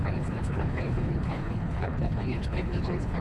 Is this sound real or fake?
fake